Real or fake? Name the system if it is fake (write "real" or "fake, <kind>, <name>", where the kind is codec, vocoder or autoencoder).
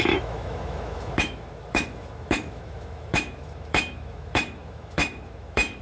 fake, autoencoder, DAC-VAE